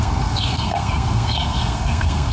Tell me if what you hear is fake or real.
fake